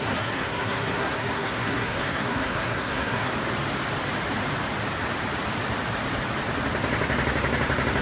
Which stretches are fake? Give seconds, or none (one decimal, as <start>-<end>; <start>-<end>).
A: 0.0-3.3